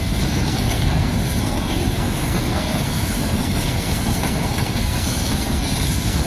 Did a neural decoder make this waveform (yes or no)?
yes